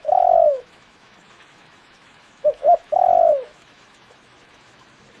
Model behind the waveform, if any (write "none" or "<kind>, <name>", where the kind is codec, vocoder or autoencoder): autoencoder, DAC-VAE